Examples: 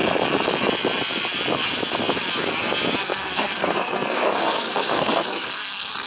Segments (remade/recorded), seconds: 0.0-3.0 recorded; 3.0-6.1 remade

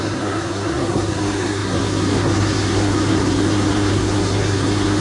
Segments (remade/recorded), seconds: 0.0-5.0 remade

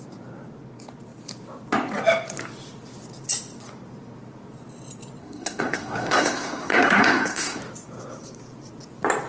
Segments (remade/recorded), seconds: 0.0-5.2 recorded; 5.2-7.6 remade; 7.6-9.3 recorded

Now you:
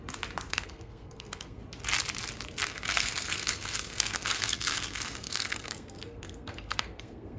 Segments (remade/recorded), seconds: 0.0-0.5 recorded; 0.5-1.6 remade; 1.6-2.7 recorded; 2.7-7.4 remade

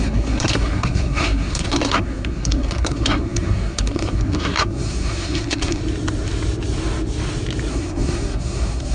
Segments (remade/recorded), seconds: 0.0-5.8 remade; 5.8-7.7 recorded; 7.7-8.9 remade

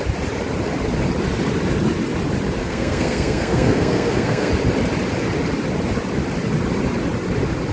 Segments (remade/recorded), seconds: 0.0-2.6 recorded; 2.6-4.5 remade; 4.5-7.7 recorded

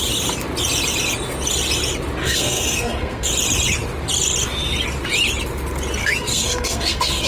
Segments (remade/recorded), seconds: 0.0-2.2 recorded; 2.2-3.3 remade; 3.3-6.0 recorded; 6.0-7.3 remade

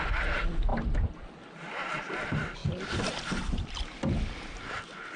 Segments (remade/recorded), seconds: 0.0-5.2 recorded